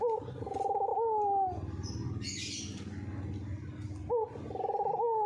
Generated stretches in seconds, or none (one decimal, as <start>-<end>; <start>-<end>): none

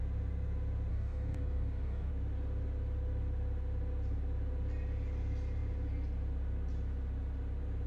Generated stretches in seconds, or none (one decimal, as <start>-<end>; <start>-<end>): 0.9-2.1

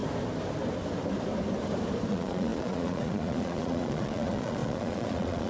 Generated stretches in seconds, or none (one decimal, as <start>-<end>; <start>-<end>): 2.1-5.5

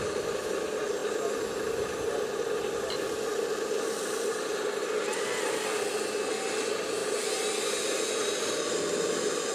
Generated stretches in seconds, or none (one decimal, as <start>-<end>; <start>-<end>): none

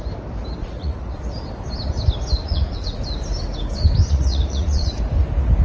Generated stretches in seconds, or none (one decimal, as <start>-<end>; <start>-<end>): 0.6-1.2; 2.4-3.0; 4.0-5.0